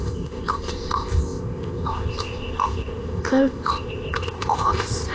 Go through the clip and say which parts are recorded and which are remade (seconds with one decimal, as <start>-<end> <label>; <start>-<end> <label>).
0.0-5.1 remade